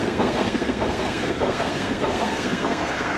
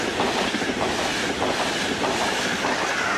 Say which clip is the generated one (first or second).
first